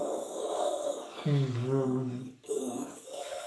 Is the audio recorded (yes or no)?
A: no